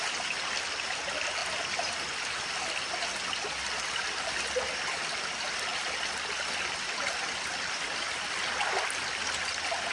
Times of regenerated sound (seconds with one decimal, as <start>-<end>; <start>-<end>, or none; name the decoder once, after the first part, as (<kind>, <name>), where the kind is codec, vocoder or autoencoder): none